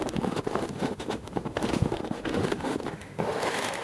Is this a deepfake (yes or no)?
yes